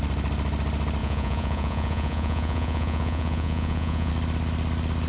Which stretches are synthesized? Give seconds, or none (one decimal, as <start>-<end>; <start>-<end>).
1.0-4.1